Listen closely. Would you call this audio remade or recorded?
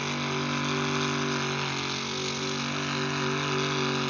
recorded